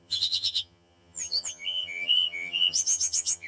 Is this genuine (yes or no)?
no